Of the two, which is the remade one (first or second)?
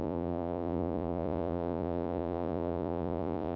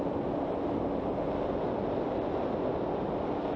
first